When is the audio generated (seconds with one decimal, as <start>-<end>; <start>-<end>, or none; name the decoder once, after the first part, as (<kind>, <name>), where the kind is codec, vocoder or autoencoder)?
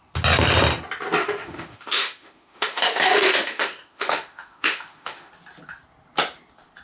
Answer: 1.2-5.3 (autoencoder, DAC-VAE)